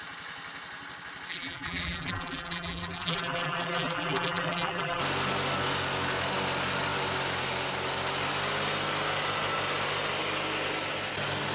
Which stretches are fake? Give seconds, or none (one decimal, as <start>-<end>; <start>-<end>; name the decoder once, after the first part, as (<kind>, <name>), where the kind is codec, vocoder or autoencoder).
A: 1.3-5.0 (vocoder, BigVGAN v2)